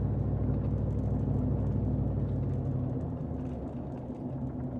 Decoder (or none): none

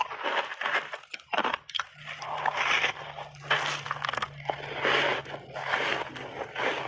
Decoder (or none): none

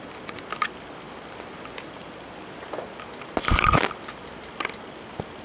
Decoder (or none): none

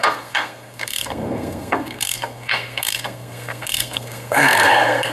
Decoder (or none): codec, SNAC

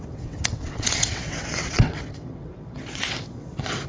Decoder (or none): vocoder, WaveNeXt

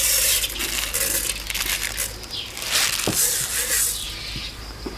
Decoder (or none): none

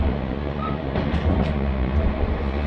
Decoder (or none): vocoder, Vocos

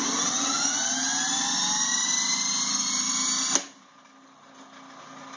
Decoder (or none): none